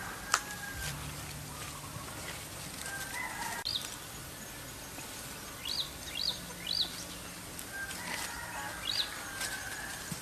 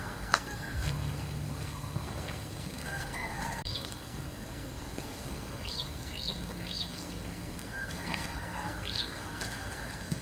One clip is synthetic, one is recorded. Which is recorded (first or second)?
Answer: first